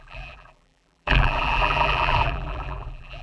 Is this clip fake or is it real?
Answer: fake